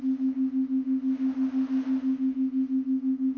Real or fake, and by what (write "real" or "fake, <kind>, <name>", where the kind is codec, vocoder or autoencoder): fake, autoencoder, DAC-VAE